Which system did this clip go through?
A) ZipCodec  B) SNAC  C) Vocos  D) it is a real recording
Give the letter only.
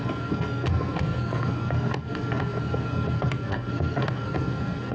B